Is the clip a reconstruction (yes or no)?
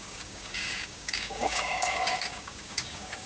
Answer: yes